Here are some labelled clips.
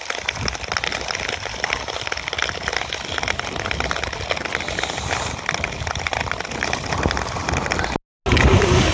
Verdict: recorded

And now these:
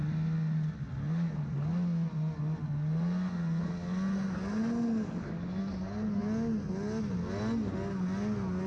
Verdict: recorded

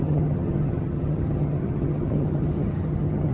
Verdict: remade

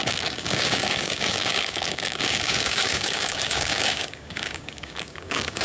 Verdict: remade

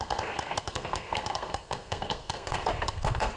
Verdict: remade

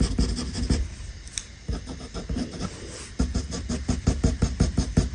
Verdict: recorded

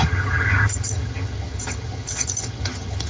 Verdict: remade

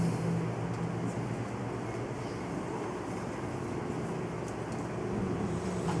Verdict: recorded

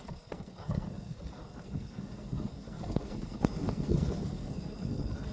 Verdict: remade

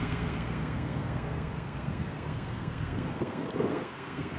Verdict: remade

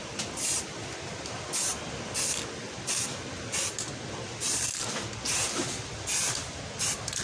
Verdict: remade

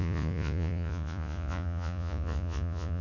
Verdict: remade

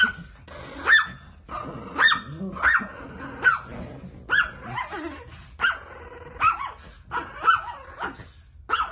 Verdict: recorded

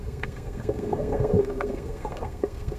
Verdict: remade